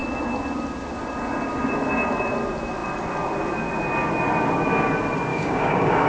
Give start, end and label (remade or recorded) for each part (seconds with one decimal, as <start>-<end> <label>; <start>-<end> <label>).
0.0-5.3 recorded; 5.3-6.1 remade